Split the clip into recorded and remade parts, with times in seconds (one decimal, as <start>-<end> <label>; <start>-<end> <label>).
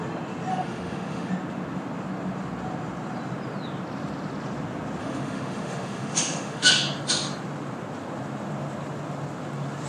0.0-0.5 recorded; 0.5-1.3 remade; 1.3-5.0 recorded; 5.0-6.7 remade; 6.7-9.9 recorded